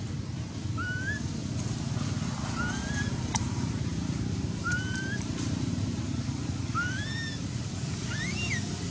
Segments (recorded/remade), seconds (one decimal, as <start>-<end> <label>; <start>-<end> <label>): 0.0-2.8 recorded; 2.8-7.7 remade; 7.7-8.9 recorded